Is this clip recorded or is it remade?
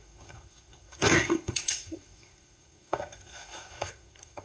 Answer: remade